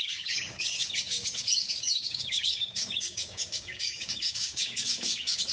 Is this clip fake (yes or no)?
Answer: yes